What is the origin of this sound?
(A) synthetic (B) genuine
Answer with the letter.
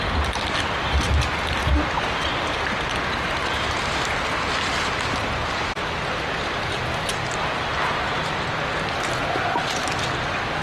B